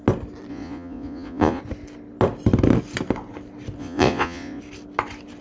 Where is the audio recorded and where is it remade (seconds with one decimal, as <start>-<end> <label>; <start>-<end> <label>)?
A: 0.0-0.5 recorded; 0.5-1.6 remade; 1.6-3.8 recorded; 3.8-4.6 remade; 4.6-5.4 recorded